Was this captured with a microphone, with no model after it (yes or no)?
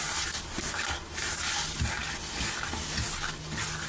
yes